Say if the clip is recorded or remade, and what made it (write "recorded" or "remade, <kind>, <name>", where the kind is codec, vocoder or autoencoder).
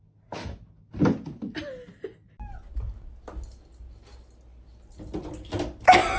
recorded